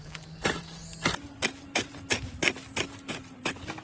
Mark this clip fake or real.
real